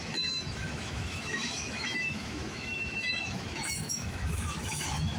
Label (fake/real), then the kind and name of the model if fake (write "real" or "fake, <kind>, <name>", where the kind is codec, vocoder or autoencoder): fake, autoencoder, DAC-VAE